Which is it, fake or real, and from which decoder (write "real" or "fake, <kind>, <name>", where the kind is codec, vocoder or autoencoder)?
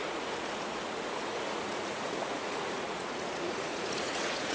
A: fake, vocoder, Vocos